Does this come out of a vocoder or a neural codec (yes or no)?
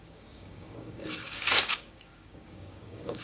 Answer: yes